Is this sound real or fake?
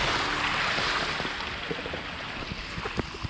real